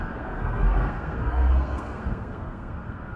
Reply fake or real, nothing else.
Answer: fake